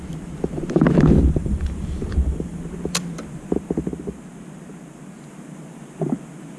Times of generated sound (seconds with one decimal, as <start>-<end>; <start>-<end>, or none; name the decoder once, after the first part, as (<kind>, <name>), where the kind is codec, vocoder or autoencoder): 1.4-2.6 (vocoder, BigVGAN v2)